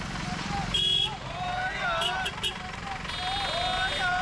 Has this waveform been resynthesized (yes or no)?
no